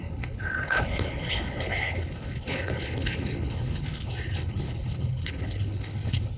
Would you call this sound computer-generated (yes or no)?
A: yes